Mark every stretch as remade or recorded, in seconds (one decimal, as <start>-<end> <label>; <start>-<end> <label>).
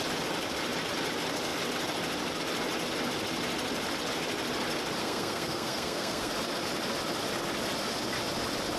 0.0-5.0 recorded; 5.0-6.3 remade; 6.3-8.8 recorded